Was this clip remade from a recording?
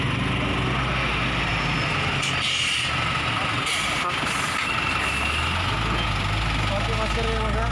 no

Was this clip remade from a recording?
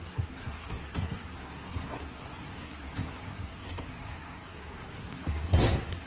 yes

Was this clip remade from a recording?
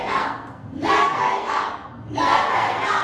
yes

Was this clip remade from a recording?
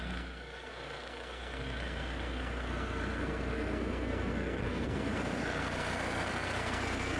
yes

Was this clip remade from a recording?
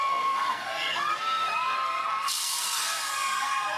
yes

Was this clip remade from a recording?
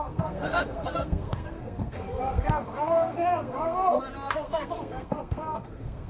yes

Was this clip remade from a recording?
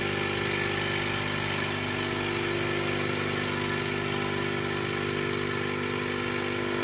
no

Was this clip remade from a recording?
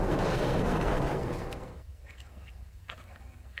yes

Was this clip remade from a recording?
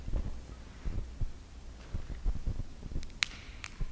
no